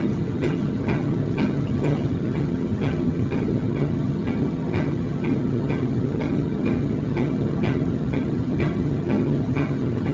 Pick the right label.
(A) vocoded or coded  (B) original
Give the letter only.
A